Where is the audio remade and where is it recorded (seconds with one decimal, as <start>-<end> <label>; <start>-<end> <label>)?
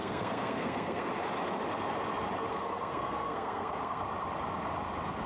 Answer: 0.0-1.1 remade; 1.1-2.5 recorded; 2.5-4.0 remade; 4.0-5.3 recorded